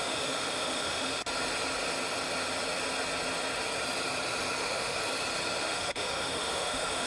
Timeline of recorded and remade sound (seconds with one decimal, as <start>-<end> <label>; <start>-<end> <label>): 0.0-1.2 remade; 1.2-4.6 recorded; 4.6-5.0 remade; 5.0-5.6 recorded; 5.6-7.1 remade